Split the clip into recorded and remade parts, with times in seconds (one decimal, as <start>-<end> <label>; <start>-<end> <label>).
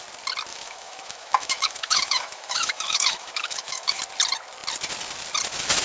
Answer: 0.0-0.5 recorded; 0.5-4.0 remade; 4.0-5.8 recorded